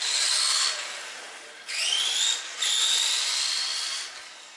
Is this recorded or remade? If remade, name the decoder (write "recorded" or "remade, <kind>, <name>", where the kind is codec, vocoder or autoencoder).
recorded